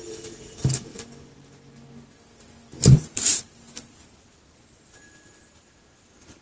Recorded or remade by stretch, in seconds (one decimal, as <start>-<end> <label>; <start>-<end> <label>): 0.0-6.4 recorded